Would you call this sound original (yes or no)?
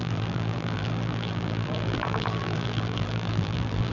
no